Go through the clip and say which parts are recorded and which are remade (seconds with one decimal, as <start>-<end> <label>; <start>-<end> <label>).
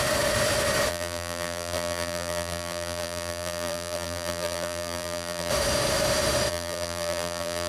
0.0-0.9 recorded; 0.9-5.5 remade; 5.5-6.5 recorded; 6.5-7.7 remade